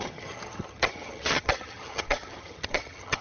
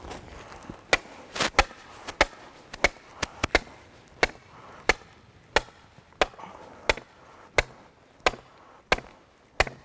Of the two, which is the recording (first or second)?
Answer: second